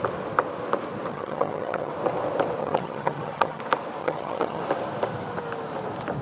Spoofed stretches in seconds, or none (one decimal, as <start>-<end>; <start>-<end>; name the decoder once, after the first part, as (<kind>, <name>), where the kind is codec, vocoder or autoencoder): 1.1-1.9 (vocoder, HiFi-GAN); 2.6-3.6; 4.0-4.6